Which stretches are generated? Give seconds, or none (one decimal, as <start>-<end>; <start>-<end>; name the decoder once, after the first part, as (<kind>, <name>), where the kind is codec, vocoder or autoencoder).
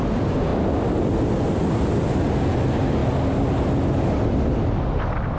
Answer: none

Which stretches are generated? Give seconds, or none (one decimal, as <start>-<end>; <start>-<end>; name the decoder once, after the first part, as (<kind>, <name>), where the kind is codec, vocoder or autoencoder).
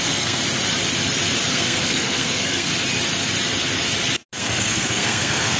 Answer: 0.0-0.4 (codec, SNAC); 1.5-2.7; 4.4-5.6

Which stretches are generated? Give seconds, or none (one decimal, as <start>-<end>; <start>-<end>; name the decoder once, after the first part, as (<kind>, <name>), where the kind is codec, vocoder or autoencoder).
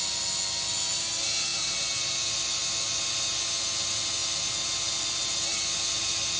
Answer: none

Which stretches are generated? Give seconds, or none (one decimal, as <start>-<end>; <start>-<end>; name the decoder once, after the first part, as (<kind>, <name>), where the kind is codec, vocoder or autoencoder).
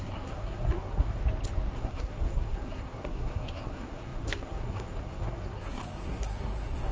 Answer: 0.0-1.2 (codec, SNAC); 1.8-6.9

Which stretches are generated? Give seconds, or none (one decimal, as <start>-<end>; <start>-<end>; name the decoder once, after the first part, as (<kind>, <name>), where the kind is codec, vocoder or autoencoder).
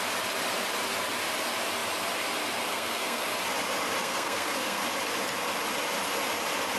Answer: 2.7-3.3 (codec, SNAC); 4.0-4.8